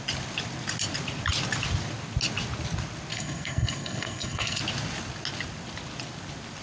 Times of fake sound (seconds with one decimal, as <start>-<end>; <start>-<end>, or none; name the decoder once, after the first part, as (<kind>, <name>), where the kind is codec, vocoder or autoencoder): 3.1-4.6 (codec, SNAC)